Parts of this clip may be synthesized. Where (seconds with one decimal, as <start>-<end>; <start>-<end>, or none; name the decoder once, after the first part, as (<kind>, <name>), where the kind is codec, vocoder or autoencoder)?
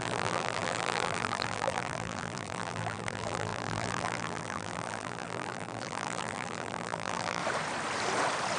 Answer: 0.0-7.4 (vocoder, BigVGAN v2)